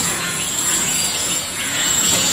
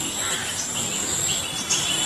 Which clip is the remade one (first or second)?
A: first